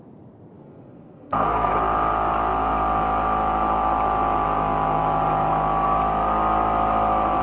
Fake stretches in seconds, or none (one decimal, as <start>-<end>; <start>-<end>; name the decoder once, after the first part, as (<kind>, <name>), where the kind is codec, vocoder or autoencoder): 0.6-1.7 (codec, SNAC)